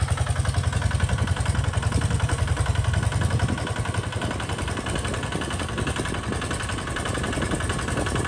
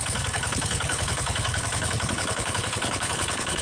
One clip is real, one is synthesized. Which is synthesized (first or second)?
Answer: second